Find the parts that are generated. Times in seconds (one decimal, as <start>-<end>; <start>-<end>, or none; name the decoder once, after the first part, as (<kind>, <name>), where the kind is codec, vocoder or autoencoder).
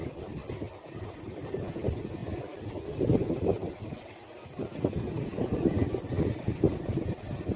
none